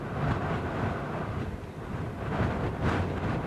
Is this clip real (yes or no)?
yes